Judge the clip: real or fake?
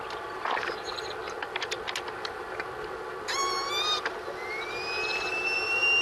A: real